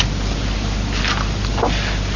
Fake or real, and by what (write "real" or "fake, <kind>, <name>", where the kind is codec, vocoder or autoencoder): real